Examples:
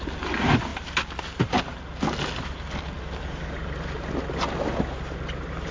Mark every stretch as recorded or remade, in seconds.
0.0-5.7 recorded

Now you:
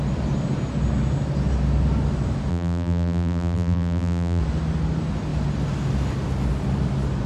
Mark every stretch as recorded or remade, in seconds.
0.0-2.5 recorded; 2.5-4.4 remade; 4.4-7.3 recorded

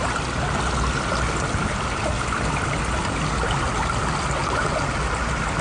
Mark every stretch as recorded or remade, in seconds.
0.0-5.6 recorded

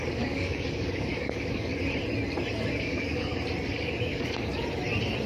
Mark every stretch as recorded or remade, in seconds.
0.0-1.7 remade; 1.7-2.8 recorded; 2.8-3.3 remade; 3.3-4.0 recorded; 4.0-4.5 remade; 4.5-5.3 recorded

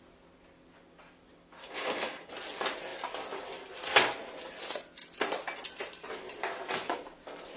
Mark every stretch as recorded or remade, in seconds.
0.0-1.6 recorded; 1.6-2.3 remade; 2.3-7.6 recorded